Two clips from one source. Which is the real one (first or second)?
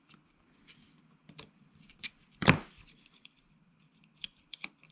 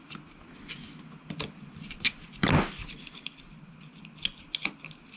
second